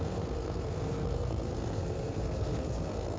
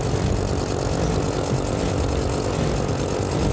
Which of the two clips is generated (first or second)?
first